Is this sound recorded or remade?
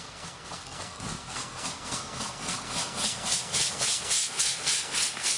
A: remade